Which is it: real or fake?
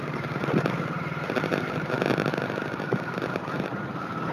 fake